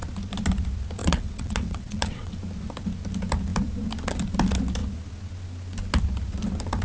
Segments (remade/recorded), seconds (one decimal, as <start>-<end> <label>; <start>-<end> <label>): 0.0-1.0 recorded; 1.0-2.4 remade; 2.4-6.8 recorded